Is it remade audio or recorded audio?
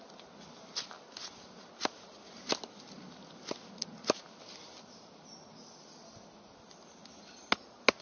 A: recorded